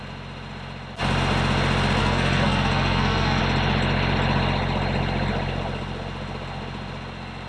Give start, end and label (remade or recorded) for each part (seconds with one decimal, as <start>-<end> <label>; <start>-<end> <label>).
0.0-2.0 recorded; 2.0-3.4 remade; 3.4-7.5 recorded